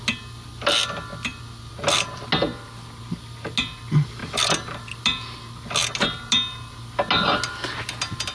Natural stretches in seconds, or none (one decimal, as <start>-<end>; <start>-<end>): 0.0-8.3